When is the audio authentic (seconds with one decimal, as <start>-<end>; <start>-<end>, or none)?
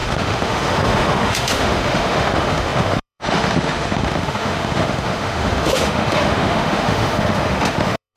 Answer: none